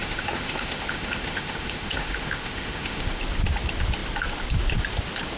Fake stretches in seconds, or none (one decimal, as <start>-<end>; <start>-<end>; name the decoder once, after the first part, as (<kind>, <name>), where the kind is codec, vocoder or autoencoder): 0.0-3.2 (autoencoder, DAC-VAE)